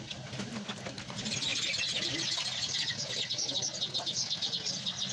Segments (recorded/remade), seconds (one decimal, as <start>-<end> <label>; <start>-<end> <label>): 0.0-5.1 recorded